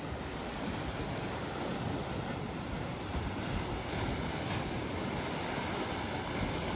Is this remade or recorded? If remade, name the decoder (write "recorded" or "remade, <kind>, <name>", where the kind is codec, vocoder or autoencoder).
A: recorded